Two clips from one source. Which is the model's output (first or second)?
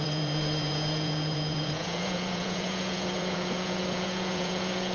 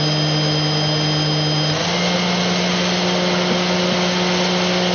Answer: first